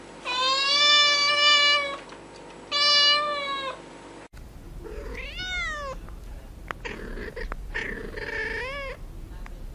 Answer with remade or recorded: recorded